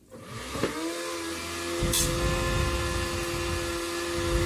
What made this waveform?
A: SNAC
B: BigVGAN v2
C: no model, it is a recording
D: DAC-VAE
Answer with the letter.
C